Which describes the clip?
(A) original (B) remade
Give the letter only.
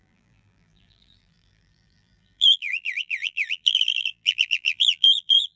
B